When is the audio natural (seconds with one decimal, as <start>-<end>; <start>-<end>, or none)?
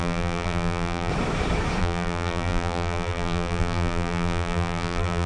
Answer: 1.1-1.8